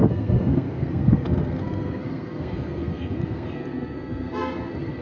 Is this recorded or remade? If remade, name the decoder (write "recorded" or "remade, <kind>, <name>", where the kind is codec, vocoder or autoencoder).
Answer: remade, codec, SNAC